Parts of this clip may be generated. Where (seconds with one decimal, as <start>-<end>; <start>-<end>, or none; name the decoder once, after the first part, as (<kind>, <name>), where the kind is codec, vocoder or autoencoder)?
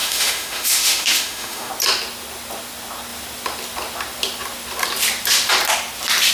0.0-1.7 (autoencoder, DAC-VAE)